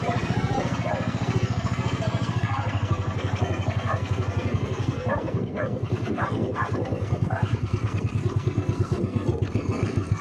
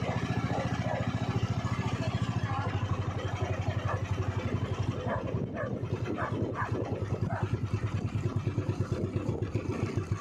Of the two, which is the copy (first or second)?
first